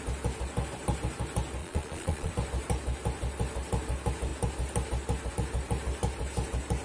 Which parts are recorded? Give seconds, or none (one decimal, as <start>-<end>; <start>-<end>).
0.0-1.6; 2.3-6.8